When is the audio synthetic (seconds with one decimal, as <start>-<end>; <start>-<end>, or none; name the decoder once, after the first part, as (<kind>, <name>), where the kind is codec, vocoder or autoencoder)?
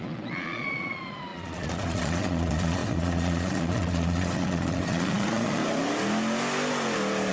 0.0-5.6 (vocoder, Vocos)